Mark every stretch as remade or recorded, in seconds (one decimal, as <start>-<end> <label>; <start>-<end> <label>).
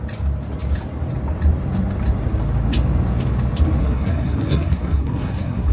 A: 0.0-3.8 recorded; 3.8-5.7 remade